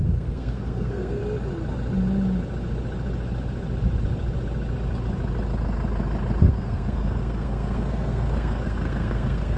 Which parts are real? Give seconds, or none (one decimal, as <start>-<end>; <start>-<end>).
1.2-6.4